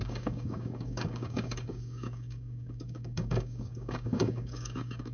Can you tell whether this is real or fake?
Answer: fake